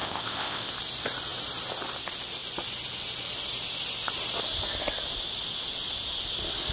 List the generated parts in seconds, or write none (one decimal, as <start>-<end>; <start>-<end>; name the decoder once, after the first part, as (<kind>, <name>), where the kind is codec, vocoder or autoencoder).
0.0-0.7 (codec, ZipCodec)